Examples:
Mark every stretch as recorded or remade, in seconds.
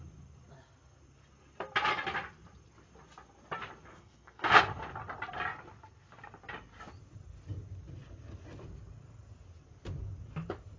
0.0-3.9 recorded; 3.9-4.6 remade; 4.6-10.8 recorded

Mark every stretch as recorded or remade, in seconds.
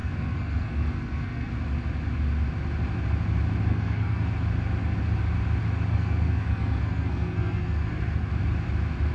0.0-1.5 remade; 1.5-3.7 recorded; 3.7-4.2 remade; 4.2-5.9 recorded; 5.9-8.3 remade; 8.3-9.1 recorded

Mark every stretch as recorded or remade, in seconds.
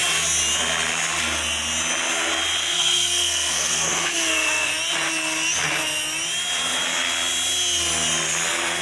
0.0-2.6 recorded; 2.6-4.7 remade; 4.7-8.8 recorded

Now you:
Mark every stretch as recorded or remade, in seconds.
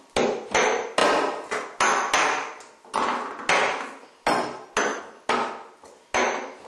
0.0-6.7 recorded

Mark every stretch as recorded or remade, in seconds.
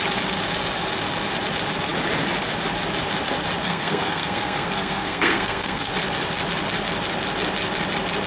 0.0-3.6 recorded; 3.6-5.9 remade; 5.9-8.3 recorded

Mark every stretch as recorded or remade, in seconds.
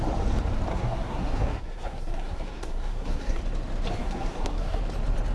0.0-0.7 recorded; 0.7-3.4 remade; 3.4-4.0 recorded; 4.0-4.8 remade; 4.8-5.3 recorded